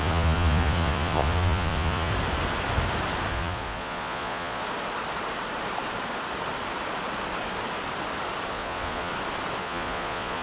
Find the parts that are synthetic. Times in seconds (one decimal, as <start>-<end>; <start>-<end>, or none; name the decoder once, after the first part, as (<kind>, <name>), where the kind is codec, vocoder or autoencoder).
0.0-2.1 (vocoder, Vocos); 3.3-4.6; 8.5-9.1; 9.6-10.4